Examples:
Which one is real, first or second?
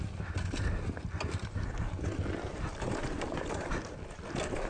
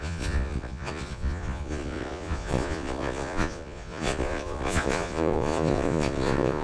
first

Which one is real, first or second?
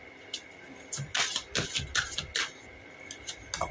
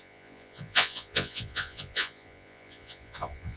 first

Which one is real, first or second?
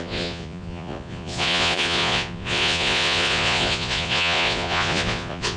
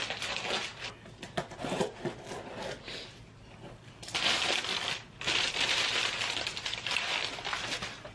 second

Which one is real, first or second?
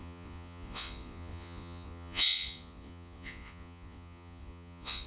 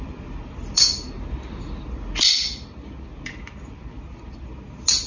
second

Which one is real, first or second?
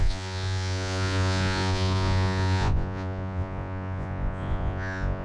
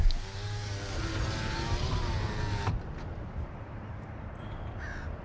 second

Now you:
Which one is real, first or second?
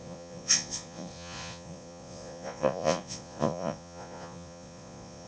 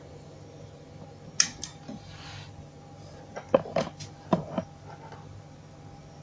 second